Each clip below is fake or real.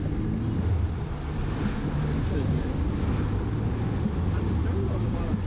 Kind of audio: real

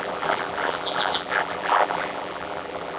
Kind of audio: fake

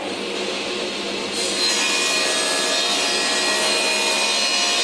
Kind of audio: real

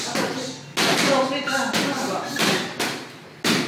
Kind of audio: real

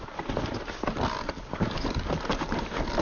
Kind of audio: real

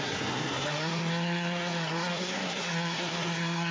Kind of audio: fake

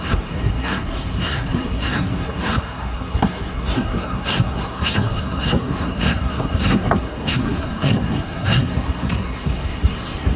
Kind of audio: fake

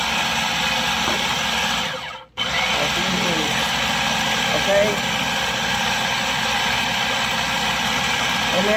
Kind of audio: real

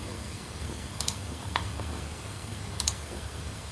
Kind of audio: fake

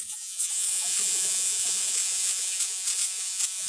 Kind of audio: fake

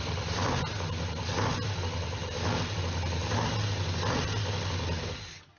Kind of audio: real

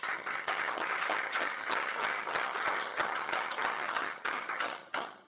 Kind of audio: fake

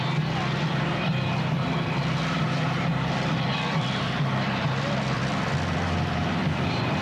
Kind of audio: fake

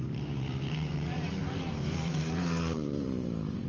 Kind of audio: fake